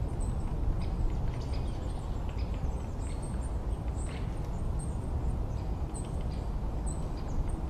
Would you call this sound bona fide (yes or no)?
yes